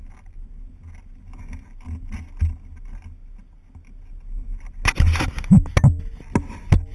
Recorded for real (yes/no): yes